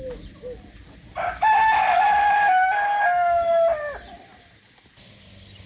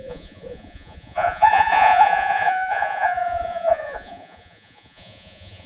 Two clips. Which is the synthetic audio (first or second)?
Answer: second